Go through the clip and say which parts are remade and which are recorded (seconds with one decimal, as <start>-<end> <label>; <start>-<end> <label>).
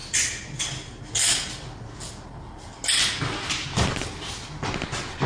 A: 0.0-5.3 recorded